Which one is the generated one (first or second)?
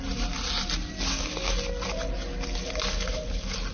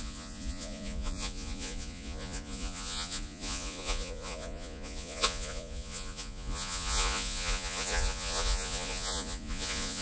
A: second